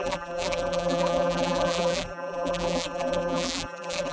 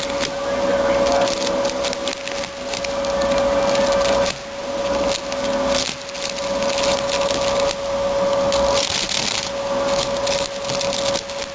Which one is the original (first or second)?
second